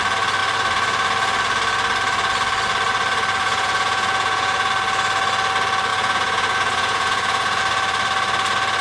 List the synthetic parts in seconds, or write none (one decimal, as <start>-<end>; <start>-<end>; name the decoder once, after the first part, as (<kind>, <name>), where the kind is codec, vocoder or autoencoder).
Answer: 3.4-4.7 (vocoder, Vocos); 5.9-7.6